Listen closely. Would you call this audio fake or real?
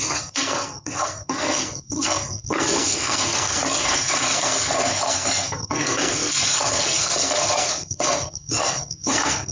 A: fake